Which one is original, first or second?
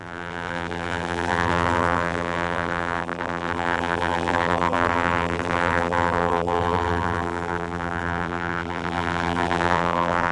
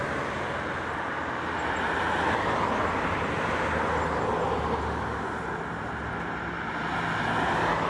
second